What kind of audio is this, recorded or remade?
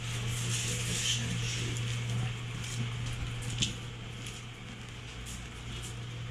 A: recorded